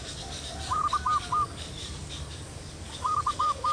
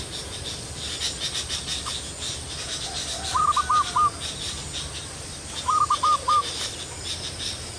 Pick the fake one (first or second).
first